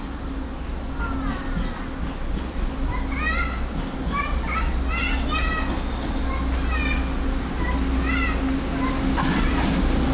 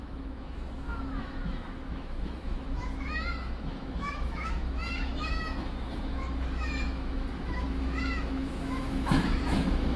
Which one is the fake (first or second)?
second